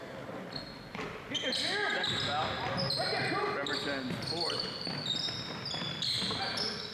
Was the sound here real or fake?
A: real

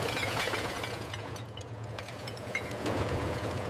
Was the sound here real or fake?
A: fake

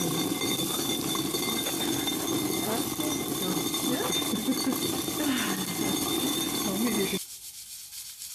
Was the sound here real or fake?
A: real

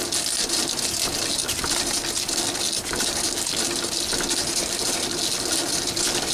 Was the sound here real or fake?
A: real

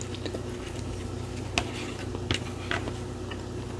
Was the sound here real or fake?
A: real